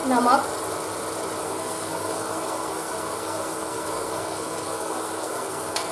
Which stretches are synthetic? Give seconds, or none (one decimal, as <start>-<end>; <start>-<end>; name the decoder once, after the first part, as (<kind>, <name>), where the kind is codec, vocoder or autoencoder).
1.4-5.9 (codec, SNAC)